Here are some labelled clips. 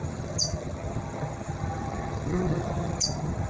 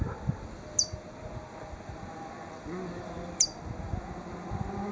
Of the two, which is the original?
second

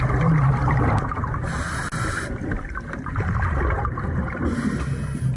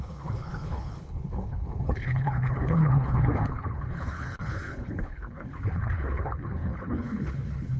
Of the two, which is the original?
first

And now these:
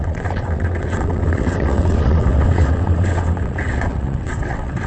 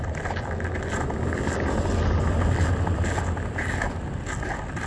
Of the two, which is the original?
second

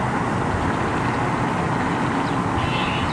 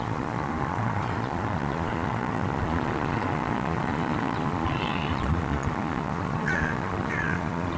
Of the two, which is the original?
first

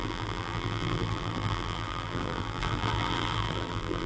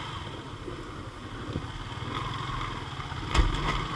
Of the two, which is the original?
second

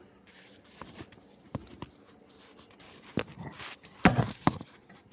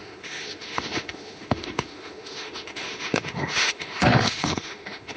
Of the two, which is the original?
first